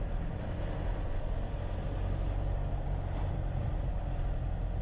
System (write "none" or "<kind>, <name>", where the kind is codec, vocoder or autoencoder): none